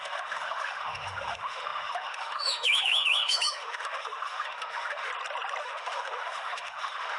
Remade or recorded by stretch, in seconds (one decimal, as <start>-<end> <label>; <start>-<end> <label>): 0.0-5.1 remade; 5.1-5.6 recorded; 5.6-7.2 remade